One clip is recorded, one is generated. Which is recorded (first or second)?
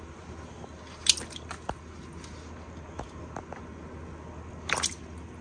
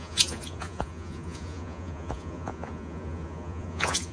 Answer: first